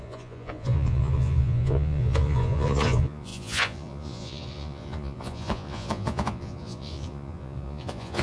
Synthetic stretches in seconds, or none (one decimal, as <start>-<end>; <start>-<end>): 0.0-8.2